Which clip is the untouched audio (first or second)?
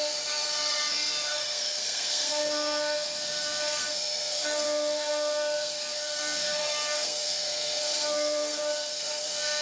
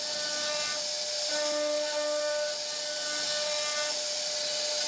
second